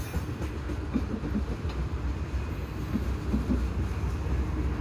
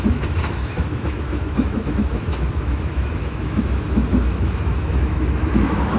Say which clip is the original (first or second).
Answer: first